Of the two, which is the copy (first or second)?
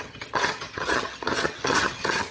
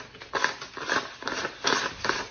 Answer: first